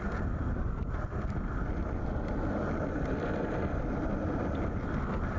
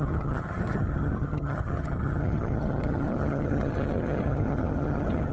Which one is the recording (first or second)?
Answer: first